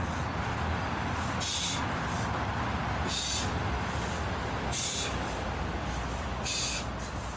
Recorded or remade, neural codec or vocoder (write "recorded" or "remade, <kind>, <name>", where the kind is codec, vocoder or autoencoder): recorded